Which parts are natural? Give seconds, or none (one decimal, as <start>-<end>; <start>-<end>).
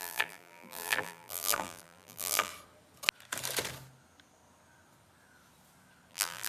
2.5-6.1